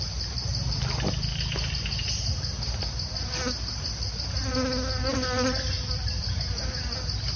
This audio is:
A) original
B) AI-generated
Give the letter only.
A